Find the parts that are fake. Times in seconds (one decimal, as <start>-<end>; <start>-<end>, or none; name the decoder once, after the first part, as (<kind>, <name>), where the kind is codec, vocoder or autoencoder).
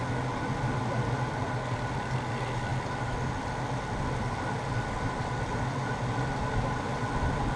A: none